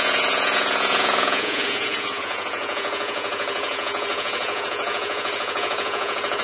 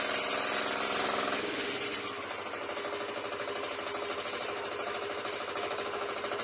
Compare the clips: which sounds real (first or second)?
second